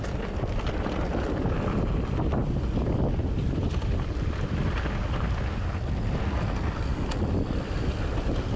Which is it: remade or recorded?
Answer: recorded